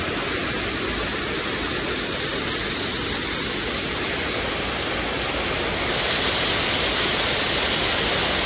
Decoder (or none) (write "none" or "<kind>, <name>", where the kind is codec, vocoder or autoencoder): none